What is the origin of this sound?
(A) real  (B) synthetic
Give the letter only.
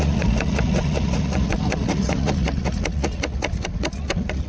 B